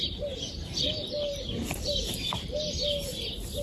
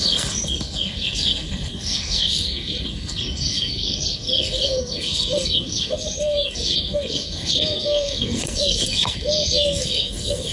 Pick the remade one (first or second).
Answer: second